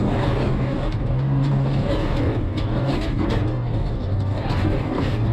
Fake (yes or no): yes